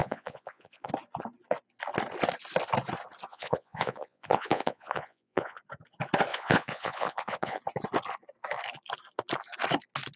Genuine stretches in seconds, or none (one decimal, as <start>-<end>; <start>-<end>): 0.9-3.3; 5.6-6.3; 7.6-10.2